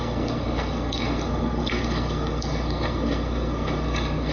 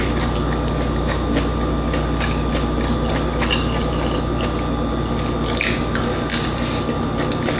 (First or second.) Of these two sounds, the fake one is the first